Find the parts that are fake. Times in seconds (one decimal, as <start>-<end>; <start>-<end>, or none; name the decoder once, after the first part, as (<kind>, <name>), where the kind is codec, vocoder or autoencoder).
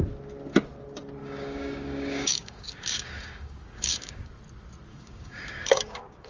1.2-4.3 (codec, DAC); 4.9-6.3